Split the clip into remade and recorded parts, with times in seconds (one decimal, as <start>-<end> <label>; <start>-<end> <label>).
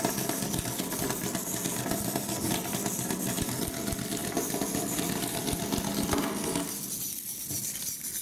0.0-8.2 recorded